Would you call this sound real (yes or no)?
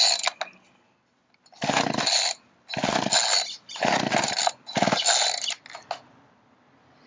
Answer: yes